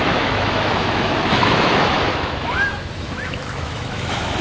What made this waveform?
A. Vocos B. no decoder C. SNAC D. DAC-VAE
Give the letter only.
D